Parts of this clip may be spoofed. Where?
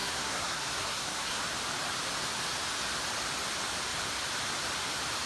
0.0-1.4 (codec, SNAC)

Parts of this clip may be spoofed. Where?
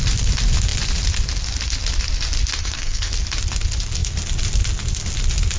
2.6-3.1 (codec, SNAC)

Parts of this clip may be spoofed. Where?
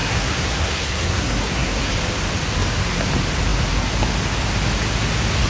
0.0-1.9 (codec, SNAC)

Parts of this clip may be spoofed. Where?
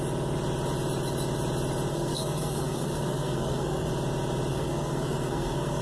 1.9-3.9 (codec, SNAC); 4.5-5.8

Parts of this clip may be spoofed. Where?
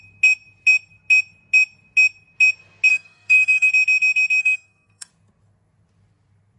2.9-3.7 (codec, SNAC); 4.4-5.1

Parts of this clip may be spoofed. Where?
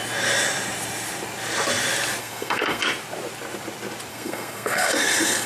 2.2-2.8 (codec, SNAC); 4.1-5.5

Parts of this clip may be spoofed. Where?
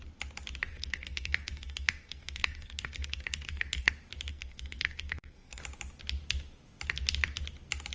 0.7-3.9 (codec, SNAC); 4.3-5.6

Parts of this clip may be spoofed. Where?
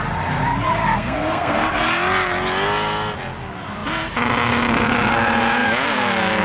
0.8-1.7 (codec, SNAC)